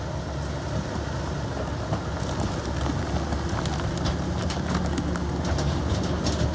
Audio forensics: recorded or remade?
recorded